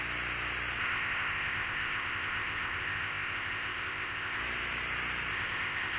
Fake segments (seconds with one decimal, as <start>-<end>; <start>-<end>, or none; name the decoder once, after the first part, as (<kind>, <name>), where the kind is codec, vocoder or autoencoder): 0.8-4.4 (codec, ZipCodec); 5.3-6.0